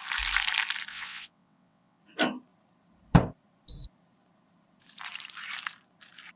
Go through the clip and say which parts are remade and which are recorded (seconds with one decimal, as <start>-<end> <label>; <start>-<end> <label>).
0.0-0.9 recorded; 0.9-2.0 remade; 2.0-6.4 recorded